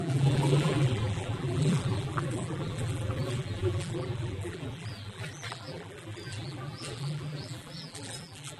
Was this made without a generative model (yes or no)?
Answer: no